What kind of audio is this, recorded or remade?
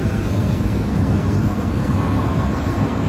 remade